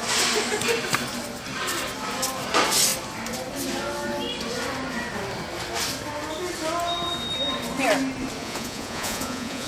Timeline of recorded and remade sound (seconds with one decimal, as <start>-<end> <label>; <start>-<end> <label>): 0.0-8.4 recorded; 8.4-9.7 remade